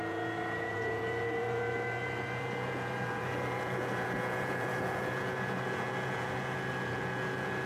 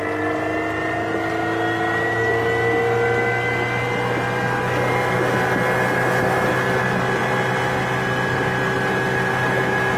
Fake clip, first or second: first